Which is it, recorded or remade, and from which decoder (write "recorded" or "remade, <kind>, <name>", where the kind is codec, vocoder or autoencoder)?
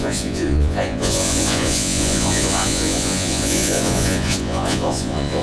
remade, vocoder, Vocos